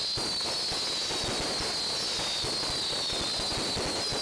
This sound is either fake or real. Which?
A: real